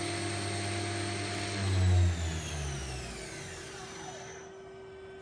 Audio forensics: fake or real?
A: real